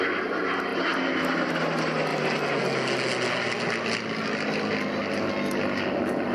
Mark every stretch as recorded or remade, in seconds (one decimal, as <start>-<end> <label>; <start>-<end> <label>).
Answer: 0.0-6.3 recorded